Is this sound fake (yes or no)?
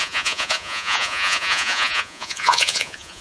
yes